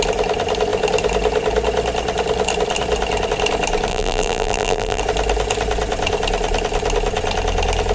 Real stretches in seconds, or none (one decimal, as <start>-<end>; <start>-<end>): 0.0-3.9; 5.0-7.9